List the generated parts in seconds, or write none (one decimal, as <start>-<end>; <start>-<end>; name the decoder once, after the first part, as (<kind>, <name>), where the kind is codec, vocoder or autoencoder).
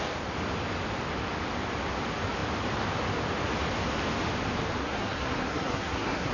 4.8-6.3 (codec, SNAC)